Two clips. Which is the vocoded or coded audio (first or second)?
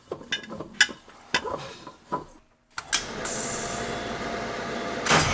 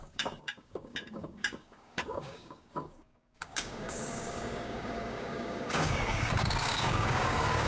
second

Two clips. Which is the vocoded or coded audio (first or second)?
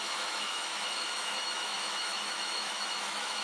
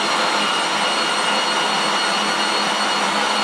first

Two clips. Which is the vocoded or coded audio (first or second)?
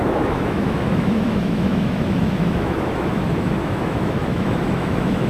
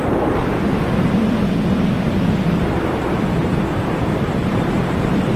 first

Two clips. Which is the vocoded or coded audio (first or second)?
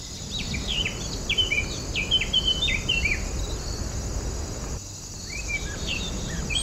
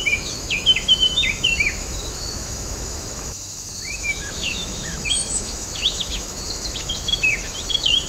second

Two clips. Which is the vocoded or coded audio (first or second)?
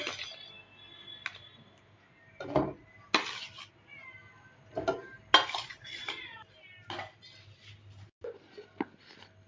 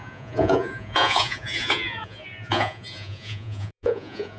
second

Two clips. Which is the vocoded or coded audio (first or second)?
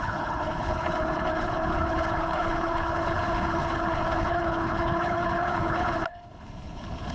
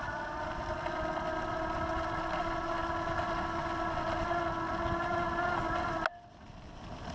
first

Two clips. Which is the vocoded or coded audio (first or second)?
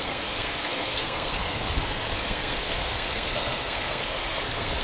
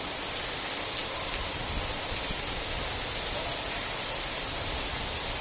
first